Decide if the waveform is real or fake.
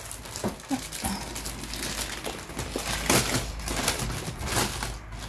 real